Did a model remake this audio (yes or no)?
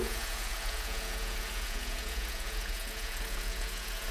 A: yes